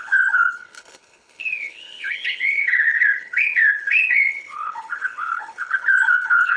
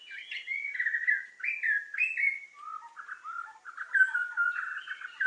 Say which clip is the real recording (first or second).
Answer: second